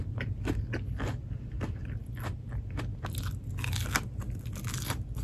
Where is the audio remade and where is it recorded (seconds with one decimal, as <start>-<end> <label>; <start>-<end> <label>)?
0.0-5.2 recorded